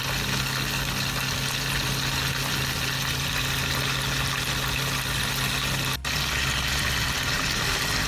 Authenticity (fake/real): real